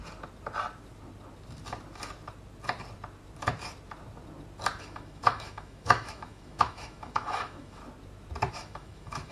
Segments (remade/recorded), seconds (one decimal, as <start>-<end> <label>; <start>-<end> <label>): 0.0-4.8 recorded; 4.8-7.8 remade; 7.8-8.5 recorded; 8.5-9.3 remade